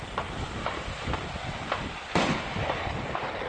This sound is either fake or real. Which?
real